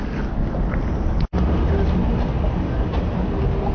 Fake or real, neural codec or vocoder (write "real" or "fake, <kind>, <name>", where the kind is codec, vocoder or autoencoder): real